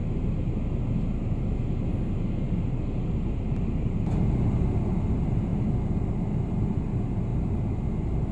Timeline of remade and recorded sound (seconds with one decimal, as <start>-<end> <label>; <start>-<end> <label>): 0.0-8.3 recorded